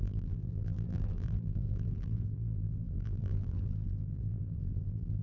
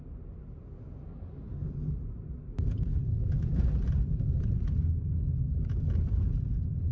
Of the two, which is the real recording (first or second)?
second